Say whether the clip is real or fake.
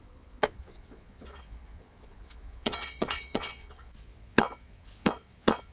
fake